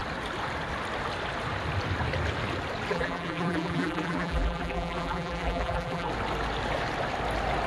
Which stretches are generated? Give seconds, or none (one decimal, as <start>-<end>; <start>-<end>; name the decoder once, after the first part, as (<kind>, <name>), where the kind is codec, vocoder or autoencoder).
2.9-6.1 (vocoder, BigVGAN v2)